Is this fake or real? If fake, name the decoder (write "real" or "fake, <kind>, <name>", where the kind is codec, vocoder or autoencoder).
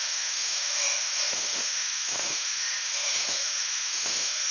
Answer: fake, autoencoder, DAC-VAE